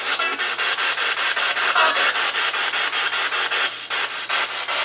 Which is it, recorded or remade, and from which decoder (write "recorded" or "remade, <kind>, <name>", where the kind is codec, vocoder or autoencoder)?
recorded